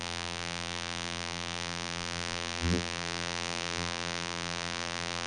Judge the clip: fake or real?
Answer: fake